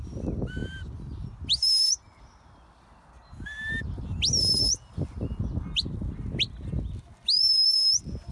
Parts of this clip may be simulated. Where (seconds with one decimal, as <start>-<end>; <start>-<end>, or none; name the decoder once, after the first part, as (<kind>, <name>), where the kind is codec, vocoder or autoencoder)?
none